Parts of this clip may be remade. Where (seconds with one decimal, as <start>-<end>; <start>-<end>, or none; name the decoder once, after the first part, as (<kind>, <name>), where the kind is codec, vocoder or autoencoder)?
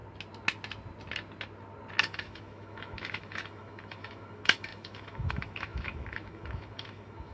2.0-7.3 (autoencoder, DAC-VAE)